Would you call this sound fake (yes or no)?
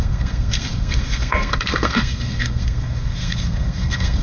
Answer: yes